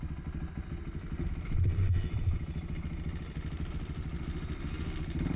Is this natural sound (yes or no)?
yes